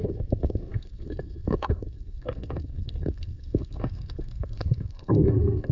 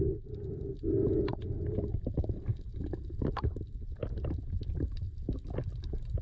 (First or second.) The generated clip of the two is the first